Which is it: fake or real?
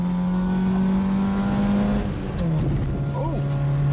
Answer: real